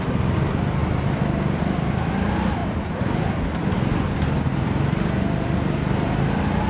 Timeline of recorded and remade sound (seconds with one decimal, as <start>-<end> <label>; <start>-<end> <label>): 0.0-6.7 recorded